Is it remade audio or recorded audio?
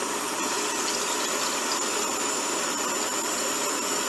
recorded